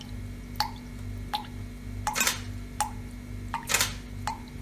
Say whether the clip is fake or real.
real